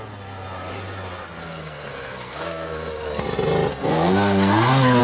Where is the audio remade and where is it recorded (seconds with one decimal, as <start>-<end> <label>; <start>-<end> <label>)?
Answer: 0.0-1.4 recorded; 1.4-3.2 remade; 3.2-3.7 recorded; 3.7-5.0 remade